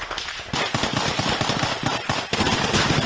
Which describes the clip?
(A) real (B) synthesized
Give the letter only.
A